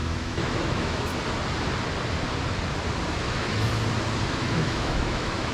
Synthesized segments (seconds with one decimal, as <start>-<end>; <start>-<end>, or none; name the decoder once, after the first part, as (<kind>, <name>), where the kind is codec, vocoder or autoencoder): 0.0-1.1 (autoencoder, DAC-VAE); 3.1-3.7; 4.3-5.5